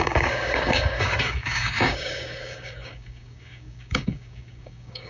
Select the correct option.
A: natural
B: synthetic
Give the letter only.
B